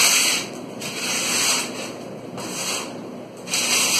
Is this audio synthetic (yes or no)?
no